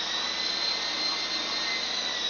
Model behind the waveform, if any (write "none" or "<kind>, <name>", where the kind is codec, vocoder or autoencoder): none